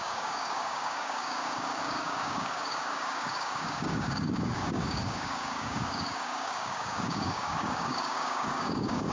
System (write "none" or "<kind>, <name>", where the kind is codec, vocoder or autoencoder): codec, DAC